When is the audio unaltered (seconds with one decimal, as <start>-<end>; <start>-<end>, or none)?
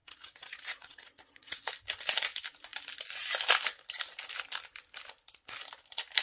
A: 1.7-6.2